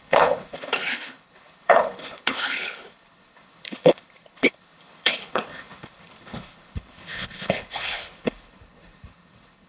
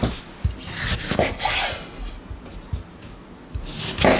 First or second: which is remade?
first